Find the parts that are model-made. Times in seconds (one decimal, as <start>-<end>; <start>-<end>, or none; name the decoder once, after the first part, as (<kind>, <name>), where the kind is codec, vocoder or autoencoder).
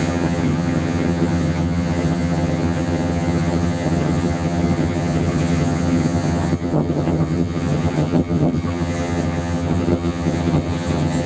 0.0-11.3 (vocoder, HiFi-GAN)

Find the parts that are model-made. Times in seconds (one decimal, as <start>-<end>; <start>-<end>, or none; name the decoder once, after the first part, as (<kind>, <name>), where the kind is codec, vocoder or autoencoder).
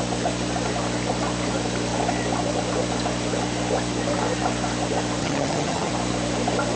5.2-5.9 (vocoder, HiFi-GAN)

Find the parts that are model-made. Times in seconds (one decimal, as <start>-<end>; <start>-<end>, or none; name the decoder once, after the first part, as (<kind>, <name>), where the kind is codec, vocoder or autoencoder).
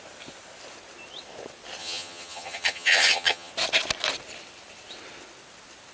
1.8-3.5 (vocoder, HiFi-GAN)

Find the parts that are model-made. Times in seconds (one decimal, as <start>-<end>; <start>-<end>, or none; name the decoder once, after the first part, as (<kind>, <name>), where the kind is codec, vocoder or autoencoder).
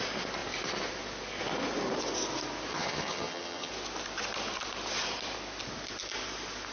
2.7-3.7 (vocoder, HiFi-GAN)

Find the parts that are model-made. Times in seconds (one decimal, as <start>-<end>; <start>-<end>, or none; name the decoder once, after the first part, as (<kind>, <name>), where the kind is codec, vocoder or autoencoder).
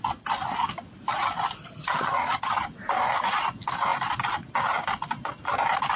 1.6-2.5 (vocoder, HiFi-GAN)